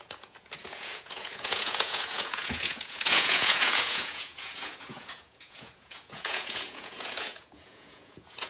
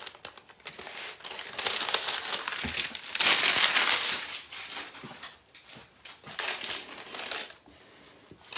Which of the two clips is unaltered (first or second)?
second